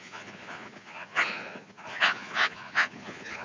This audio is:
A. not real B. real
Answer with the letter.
A